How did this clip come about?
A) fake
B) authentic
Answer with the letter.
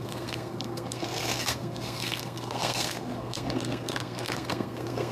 A